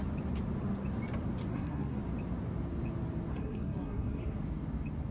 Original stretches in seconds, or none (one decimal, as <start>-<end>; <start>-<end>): 0.0-1.5; 2.0-3.3; 4.4-5.1